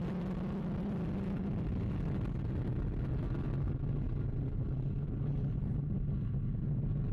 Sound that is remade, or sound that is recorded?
recorded